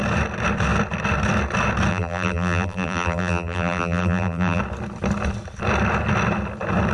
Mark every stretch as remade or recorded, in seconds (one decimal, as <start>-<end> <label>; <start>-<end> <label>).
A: 0.0-1.9 recorded; 1.9-4.6 remade; 4.6-6.9 recorded